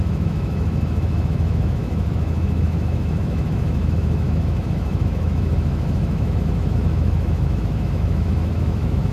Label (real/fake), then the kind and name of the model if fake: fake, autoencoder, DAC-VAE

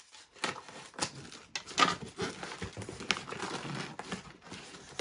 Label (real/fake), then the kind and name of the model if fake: real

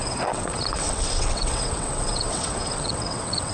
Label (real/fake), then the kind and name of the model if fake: fake, vocoder, WaveNeXt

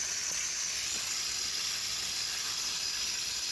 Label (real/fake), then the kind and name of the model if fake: real